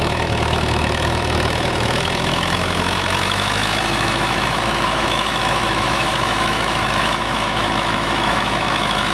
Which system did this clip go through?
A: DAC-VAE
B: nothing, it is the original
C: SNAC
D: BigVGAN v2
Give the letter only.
A